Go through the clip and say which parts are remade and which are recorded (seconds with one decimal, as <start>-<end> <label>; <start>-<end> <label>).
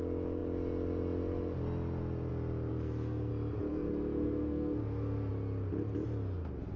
0.0-2.7 recorded; 2.7-3.3 remade; 3.3-3.7 recorded; 3.7-5.3 remade; 5.3-6.8 recorded